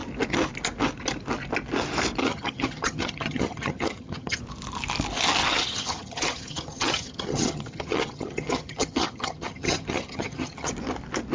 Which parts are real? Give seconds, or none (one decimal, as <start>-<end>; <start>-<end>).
0.0-2.2; 4.4-5.4; 10.7-11.3